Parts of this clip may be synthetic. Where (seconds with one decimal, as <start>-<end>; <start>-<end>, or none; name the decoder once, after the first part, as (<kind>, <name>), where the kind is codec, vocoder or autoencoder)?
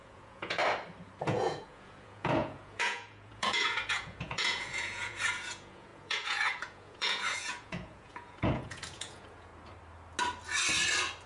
0.0-0.6 (vocoder, Vocos); 1.2-9.5